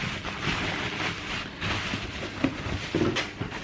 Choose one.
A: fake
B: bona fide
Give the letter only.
B